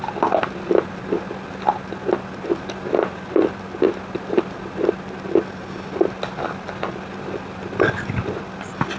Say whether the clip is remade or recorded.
recorded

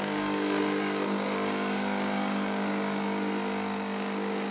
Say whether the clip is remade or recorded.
remade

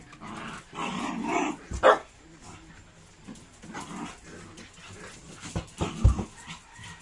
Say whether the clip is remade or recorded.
recorded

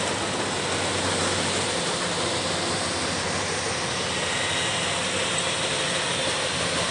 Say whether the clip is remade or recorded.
recorded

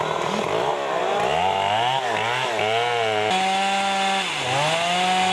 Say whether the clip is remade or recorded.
recorded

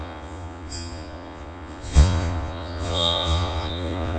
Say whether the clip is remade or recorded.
remade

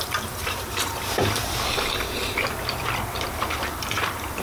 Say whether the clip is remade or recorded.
remade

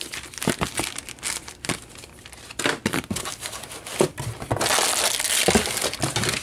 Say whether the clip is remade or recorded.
recorded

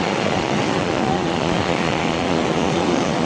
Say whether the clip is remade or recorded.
remade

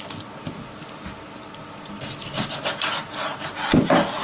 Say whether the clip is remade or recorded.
recorded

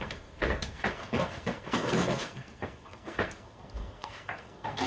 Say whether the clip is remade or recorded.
remade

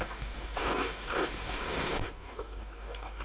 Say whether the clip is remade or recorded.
remade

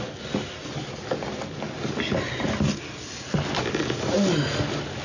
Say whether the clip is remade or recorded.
recorded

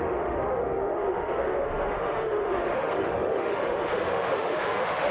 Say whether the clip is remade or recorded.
remade